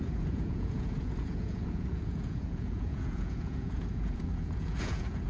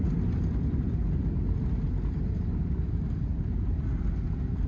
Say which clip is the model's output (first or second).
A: first